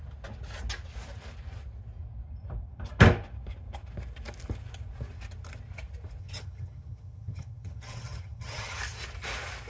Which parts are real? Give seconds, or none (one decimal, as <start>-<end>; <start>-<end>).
0.0-6.2; 8.8-9.7